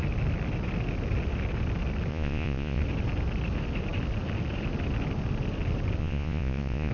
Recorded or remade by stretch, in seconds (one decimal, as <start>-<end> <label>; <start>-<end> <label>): 0.0-2.1 recorded; 2.1-2.8 remade; 2.8-6.0 recorded; 6.0-6.9 remade